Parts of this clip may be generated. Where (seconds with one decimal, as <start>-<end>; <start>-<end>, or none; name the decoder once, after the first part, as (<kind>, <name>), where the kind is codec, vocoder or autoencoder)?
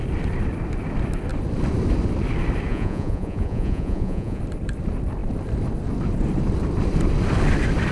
2.7-4.4 (vocoder, Vocos)